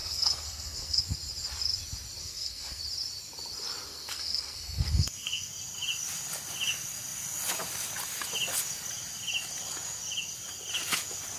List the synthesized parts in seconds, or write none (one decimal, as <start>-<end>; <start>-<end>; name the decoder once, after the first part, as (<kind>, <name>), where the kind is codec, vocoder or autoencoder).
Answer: 0.0-1.0 (codec, SNAC); 2.2-2.8; 3.9-5.5